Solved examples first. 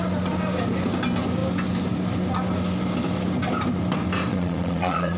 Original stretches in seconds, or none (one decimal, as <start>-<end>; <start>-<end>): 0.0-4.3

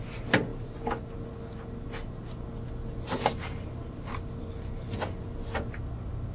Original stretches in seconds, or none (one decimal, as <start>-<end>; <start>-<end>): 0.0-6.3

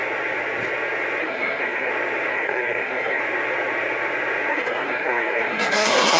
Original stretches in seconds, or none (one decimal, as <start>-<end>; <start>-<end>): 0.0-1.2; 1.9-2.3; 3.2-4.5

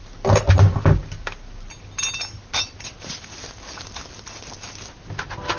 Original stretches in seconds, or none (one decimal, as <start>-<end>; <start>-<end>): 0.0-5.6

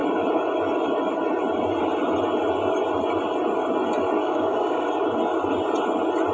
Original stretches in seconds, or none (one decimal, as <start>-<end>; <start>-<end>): 0.0-4.2; 4.9-6.3